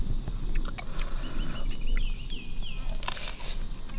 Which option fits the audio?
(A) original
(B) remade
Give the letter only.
A